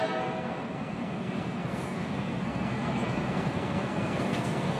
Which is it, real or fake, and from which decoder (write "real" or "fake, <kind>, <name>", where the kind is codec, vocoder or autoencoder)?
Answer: fake, codec, SNAC